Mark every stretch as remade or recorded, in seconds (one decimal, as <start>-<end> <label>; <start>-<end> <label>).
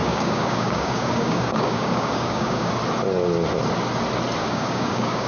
0.0-2.7 remade; 2.7-4.4 recorded; 4.4-5.3 remade